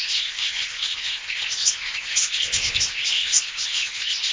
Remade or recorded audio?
remade